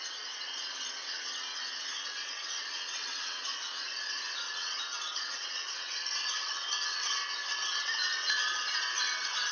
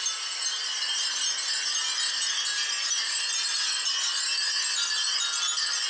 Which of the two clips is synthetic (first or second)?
first